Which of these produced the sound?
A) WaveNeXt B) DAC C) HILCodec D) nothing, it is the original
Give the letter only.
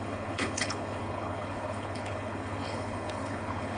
C